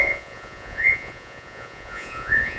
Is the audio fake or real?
fake